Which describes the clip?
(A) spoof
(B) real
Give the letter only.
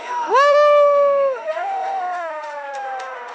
A